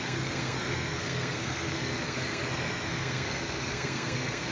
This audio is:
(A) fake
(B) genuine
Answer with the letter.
A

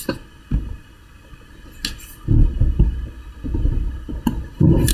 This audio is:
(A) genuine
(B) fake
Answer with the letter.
A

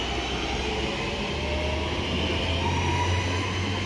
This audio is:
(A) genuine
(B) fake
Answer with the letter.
A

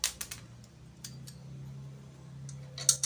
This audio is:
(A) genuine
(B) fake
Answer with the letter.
A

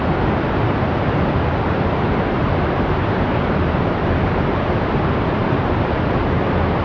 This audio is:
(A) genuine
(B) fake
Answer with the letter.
A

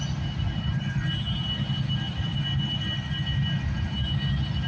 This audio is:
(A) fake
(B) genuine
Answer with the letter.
B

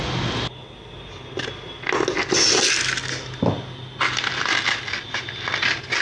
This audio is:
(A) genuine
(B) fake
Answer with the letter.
A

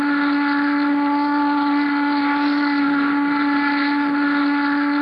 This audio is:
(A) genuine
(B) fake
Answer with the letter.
A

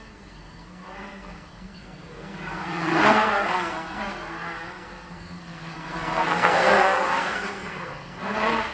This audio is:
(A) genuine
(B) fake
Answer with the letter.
B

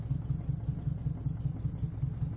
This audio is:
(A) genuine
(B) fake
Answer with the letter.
A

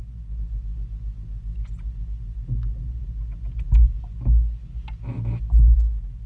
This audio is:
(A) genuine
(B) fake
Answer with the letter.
A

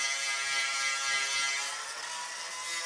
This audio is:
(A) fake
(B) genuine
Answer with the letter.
B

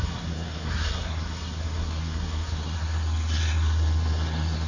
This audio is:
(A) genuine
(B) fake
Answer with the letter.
B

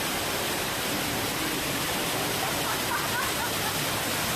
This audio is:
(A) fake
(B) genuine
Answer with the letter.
B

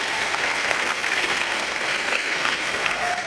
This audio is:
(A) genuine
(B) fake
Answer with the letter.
B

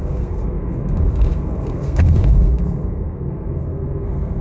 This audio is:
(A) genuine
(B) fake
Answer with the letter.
B